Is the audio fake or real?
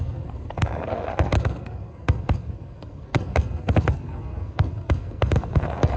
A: fake